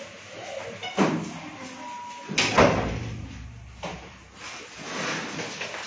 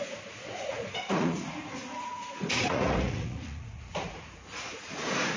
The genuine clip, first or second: first